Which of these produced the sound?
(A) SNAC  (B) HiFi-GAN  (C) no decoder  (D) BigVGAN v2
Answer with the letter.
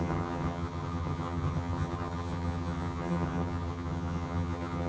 B